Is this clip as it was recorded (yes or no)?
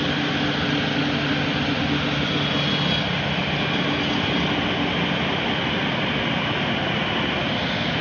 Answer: yes